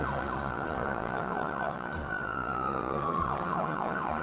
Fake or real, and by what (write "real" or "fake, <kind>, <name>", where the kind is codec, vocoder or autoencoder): fake, vocoder, Vocos